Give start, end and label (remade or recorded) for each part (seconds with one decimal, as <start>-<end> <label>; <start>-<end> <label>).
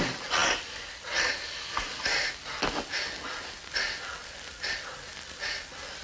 0.0-6.0 recorded